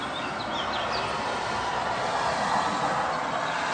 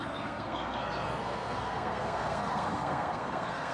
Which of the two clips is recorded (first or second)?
first